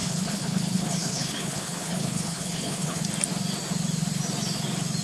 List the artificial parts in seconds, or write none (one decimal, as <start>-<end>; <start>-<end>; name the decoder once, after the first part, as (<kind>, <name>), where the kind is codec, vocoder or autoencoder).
0.0-3.0 (codec, HILCodec)

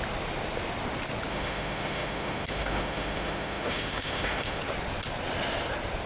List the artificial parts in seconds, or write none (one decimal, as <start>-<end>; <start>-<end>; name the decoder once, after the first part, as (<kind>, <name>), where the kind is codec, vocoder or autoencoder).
1.3-4.6 (autoencoder, DAC-VAE)